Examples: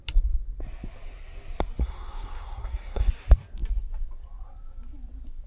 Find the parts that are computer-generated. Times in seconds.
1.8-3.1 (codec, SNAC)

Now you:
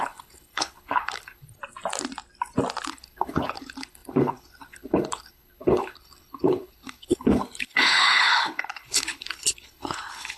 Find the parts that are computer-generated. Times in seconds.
0.0-1.6 (codec, HILCodec); 2.9-10.4

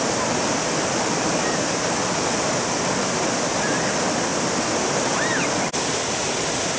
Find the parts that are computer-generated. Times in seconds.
none

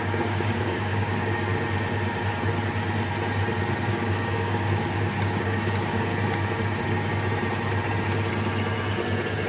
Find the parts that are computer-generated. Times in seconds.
0.0-1.5 (codec, DAC); 3.9-6.1

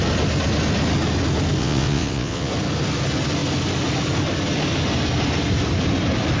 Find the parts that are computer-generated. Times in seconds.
1.6-2.5 (vocoder, WaveNeXt)

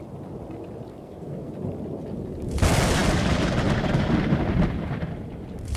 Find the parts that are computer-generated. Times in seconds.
0.9-1.5 (codec, SNAC)